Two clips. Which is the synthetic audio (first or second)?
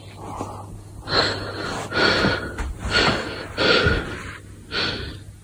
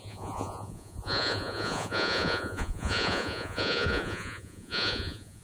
second